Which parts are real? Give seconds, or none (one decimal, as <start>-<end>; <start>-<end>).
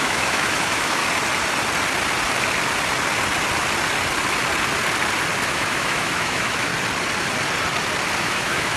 1.0-5.5; 6.7-8.2